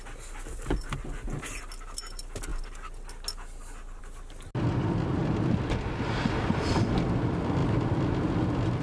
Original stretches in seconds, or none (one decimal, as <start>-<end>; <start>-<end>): 0.0-8.8